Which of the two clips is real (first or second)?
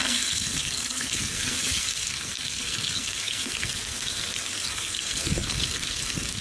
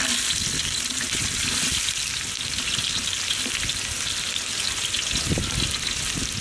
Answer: second